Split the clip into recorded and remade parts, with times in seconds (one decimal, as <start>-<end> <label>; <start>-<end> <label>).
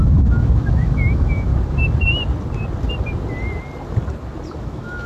0.0-1.5 remade; 1.5-4.6 recorded; 4.6-5.1 remade